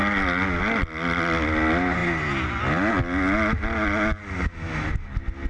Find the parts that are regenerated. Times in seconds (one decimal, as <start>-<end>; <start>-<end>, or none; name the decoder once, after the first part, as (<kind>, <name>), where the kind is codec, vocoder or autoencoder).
none